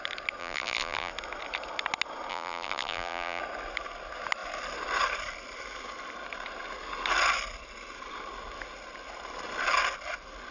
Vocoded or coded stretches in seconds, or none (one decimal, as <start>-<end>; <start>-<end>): 0.4-1.1; 2.3-3.4